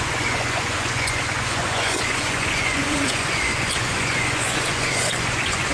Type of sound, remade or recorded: remade